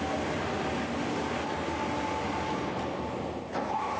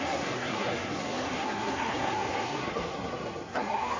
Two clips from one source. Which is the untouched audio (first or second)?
first